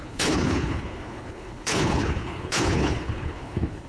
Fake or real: fake